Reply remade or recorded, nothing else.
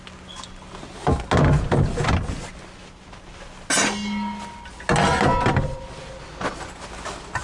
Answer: recorded